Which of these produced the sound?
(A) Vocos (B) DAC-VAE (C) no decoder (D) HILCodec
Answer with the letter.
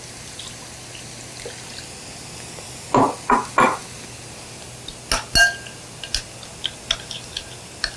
C